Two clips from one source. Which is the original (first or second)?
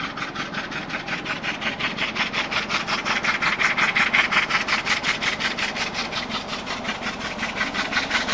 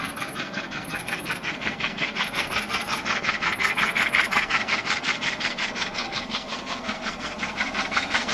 first